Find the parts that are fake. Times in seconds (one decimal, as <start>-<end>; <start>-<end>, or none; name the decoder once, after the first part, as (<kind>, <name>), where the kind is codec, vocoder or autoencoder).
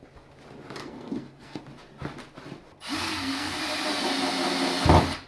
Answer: 0.8-1.6 (codec, SNAC); 3.0-3.6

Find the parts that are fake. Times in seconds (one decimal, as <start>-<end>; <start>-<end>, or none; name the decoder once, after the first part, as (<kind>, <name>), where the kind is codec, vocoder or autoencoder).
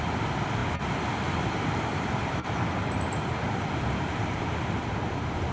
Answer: 0.0-0.6 (vocoder, BigVGAN v2); 1.2-5.5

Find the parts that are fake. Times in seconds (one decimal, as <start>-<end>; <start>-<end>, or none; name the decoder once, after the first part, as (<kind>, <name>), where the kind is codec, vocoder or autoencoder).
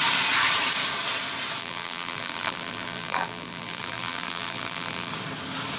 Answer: 1.6-5.1 (vocoder, BigVGAN v2)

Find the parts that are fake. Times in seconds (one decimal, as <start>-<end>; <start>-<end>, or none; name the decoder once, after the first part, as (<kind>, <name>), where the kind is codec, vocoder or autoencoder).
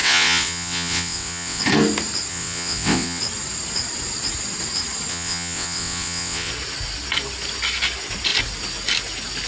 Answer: 0.0-1.6 (vocoder, WaveNeXt); 2.3-3.2; 5.1-6.5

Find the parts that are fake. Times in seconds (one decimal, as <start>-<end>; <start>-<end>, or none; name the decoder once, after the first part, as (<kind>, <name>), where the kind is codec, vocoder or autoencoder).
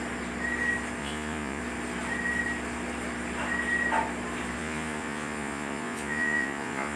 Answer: 1.0-1.6 (vocoder, Vocos); 4.6-7.0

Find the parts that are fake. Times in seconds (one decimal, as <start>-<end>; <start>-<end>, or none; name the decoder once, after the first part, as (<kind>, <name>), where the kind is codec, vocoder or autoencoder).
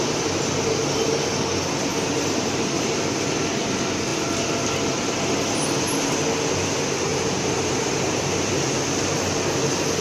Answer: 1.9-2.9 (vocoder, BigVGAN v2); 7.1-8.5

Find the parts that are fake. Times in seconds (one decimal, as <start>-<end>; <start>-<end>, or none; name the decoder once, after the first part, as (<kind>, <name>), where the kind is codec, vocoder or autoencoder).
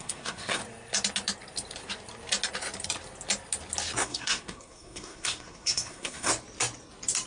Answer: 0.0-0.6 (codec, SNAC); 4.0-6.3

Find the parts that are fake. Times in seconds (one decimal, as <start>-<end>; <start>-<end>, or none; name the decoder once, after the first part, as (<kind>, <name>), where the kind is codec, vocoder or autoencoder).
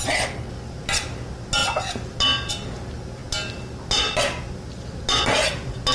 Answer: none